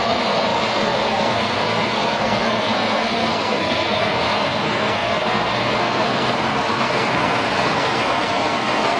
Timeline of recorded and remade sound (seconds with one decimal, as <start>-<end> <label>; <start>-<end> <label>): 0.0-9.0 remade